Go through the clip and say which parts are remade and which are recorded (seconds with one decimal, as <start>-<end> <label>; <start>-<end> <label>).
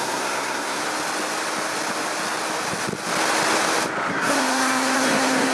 0.0-0.8 remade; 0.8-4.1 recorded; 4.1-5.5 remade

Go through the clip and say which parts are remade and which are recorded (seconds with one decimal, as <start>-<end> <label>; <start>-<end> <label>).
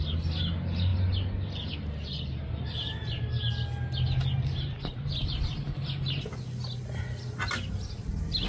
0.0-8.5 recorded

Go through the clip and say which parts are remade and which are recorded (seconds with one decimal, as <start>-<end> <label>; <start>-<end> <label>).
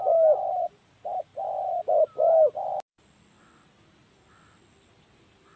0.0-5.6 recorded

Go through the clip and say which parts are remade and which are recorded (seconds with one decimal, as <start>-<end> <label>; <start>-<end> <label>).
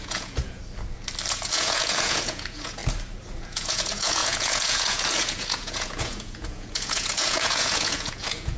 0.0-0.6 remade; 0.6-1.3 recorded; 1.3-2.8 remade; 2.8-3.4 recorded; 3.4-8.6 remade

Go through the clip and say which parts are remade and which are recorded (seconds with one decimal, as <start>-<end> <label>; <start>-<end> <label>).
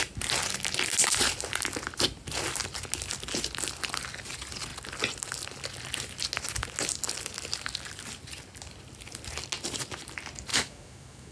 0.0-10.5 recorded; 10.5-11.3 remade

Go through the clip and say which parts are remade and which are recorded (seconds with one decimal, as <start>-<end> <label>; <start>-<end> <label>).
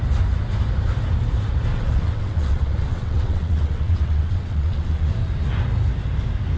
0.0-1.7 recorded; 1.7-5.1 remade; 5.1-6.6 recorded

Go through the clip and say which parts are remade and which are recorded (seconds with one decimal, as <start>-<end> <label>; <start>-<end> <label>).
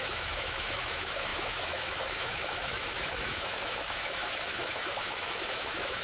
0.0-6.0 remade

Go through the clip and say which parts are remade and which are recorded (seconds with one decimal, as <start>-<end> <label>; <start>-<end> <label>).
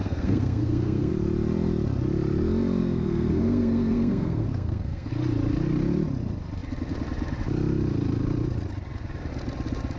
0.0-1.1 remade; 1.1-2.8 recorded; 2.8-5.1 remade; 5.1-10.0 recorded